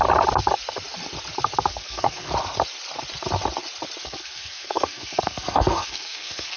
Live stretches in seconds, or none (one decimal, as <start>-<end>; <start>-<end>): 0.0-1.7; 2.3-4.0